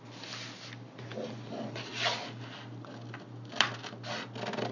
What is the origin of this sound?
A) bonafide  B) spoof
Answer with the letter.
A